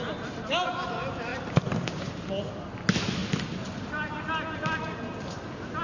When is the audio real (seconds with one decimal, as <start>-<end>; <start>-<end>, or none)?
0.0-1.3; 2.1-5.8